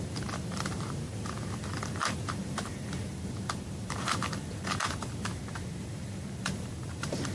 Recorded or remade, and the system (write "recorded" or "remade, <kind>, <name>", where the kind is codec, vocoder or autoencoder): remade, vocoder, BigVGAN v2